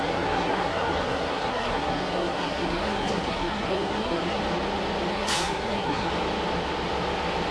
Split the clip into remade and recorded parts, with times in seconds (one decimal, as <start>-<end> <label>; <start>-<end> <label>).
0.0-4.4 remade; 4.4-5.1 recorded; 5.1-6.1 remade; 6.1-7.5 recorded